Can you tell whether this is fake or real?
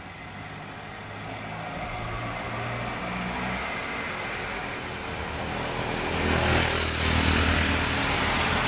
real